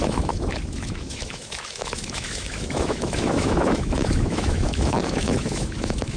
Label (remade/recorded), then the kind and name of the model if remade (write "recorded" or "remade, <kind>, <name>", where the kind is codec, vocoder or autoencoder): remade, autoencoder, DAC-VAE